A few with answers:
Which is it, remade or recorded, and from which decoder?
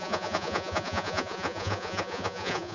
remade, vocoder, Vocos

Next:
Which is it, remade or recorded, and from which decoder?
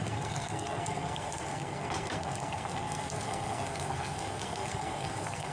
remade, codec, SNAC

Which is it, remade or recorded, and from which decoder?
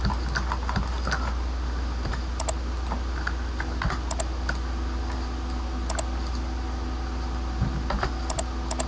recorded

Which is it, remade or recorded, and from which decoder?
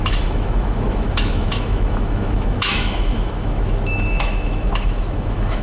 remade, autoencoder, DAC-VAE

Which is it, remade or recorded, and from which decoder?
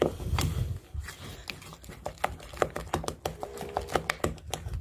recorded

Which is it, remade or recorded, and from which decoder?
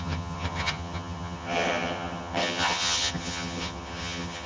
remade, vocoder, HiFi-GAN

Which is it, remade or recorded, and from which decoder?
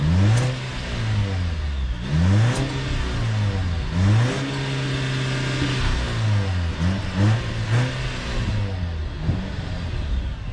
recorded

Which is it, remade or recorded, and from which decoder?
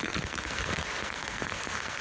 remade, codec, SNAC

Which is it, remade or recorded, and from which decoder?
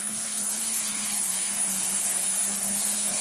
remade, codec, HILCodec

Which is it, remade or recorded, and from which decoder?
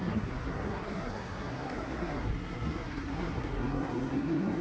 remade, codec, SNAC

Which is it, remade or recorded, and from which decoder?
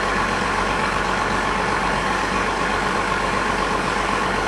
remade, codec, DAC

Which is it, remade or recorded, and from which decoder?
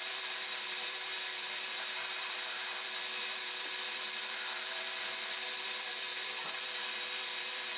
remade, vocoder, BigVGAN v2